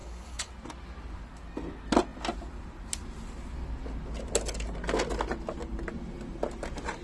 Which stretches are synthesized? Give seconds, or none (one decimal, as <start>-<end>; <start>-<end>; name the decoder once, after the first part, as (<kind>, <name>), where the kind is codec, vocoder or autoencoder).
0.0-0.5 (codec, DAC)